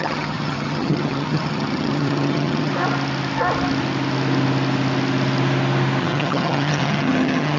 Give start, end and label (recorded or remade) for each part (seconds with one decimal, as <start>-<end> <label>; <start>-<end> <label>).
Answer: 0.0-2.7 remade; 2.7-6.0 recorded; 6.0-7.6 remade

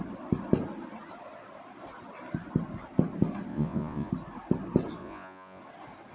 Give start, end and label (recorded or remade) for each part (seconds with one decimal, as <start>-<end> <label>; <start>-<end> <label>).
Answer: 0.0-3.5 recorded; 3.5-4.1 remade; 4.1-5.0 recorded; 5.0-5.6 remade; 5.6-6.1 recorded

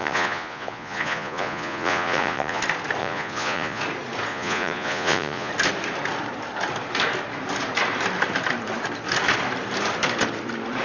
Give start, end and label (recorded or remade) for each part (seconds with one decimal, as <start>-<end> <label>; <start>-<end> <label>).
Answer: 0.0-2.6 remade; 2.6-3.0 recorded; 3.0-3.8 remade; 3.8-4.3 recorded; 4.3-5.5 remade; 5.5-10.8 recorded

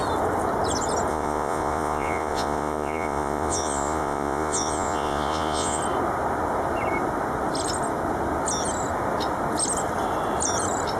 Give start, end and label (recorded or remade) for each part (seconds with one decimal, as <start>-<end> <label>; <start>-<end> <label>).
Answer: 0.0-1.1 recorded; 1.1-5.8 remade; 5.8-11.0 recorded

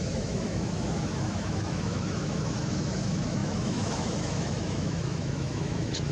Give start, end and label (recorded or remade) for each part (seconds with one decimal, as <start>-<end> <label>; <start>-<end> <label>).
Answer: 0.0-6.1 remade